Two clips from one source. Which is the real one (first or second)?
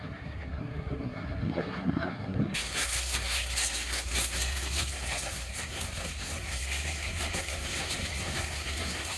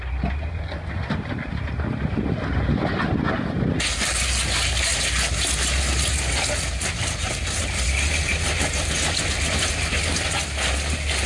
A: second